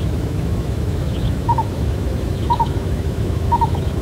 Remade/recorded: remade